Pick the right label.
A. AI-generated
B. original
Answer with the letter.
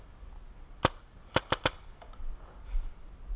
B